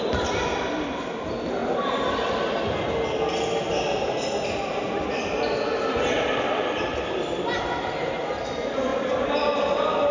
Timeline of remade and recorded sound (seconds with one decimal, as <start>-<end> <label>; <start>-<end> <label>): 0.0-10.1 recorded